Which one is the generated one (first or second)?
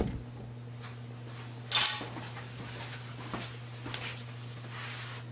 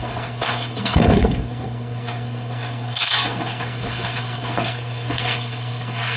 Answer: second